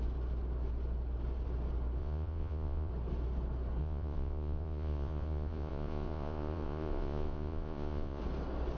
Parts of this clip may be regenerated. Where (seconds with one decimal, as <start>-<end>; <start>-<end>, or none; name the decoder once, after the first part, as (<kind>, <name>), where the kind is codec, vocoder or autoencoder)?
2.0-2.9 (vocoder, Vocos); 3.8-8.2